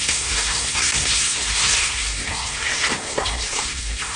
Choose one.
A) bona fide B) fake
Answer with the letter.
B